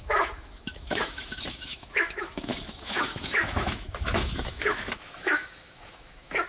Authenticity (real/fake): fake